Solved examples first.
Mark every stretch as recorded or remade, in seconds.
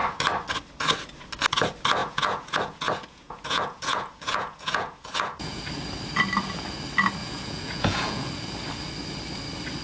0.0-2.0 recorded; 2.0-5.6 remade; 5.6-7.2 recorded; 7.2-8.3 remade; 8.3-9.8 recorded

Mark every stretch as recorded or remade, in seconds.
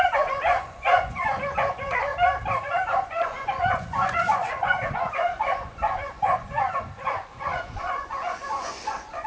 0.0-2.1 remade; 2.1-2.6 recorded; 2.6-9.3 remade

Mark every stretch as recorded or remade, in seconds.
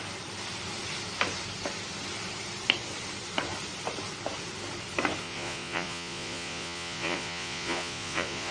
0.0-5.2 recorded; 5.2-8.5 remade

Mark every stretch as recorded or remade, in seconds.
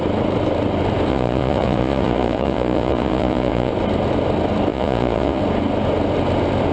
0.0-1.1 recorded; 1.1-3.7 remade; 3.7-4.7 recorded; 4.7-5.4 remade; 5.4-6.7 recorded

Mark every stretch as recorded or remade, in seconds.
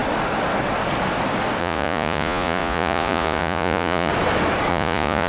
0.0-1.6 recorded; 1.6-4.1 remade; 4.1-4.7 recorded; 4.7-5.3 remade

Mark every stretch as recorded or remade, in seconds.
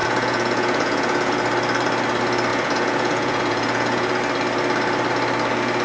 0.0-1.4 remade; 1.4-2.5 recorded; 2.5-4.2 remade; 4.2-5.8 recorded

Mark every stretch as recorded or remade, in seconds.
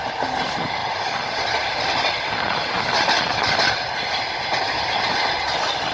0.0-5.9 recorded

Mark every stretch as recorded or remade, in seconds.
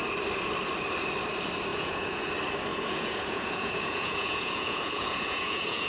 0.0-1.7 recorded; 1.7-2.3 remade; 2.3-2.7 recorded; 2.7-5.9 remade